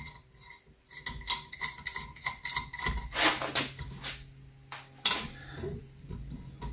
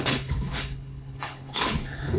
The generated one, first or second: second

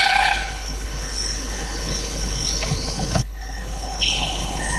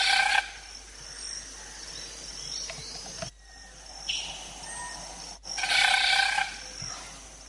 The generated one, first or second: first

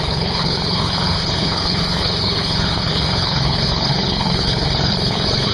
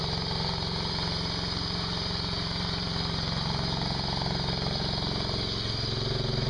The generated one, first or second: first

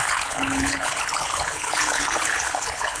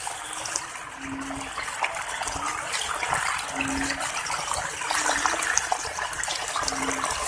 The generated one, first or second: first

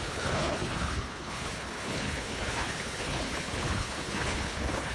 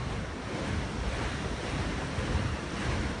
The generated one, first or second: first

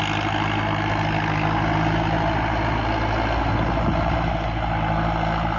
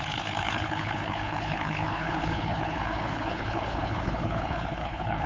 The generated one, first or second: second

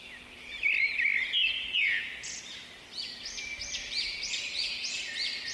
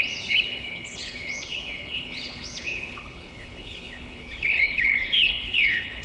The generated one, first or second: second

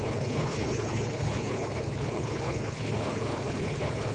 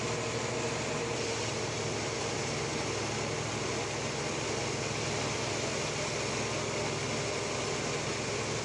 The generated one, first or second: first